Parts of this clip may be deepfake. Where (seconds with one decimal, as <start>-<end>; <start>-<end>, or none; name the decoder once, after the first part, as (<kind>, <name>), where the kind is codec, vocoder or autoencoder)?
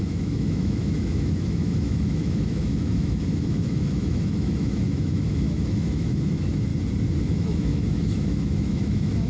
0.0-6.7 (autoencoder, DAC-VAE); 7.2-9.3